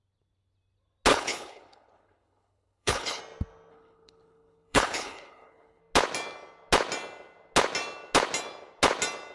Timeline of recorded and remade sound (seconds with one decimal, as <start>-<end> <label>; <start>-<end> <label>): 0.0-1.1 recorded; 1.1-3.2 remade; 3.2-3.7 recorded; 3.7-5.8 remade; 5.8-9.3 recorded